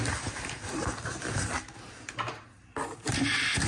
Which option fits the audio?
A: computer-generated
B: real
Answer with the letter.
B